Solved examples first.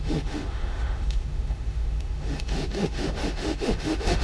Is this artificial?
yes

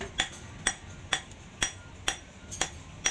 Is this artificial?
no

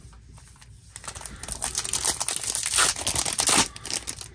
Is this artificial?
no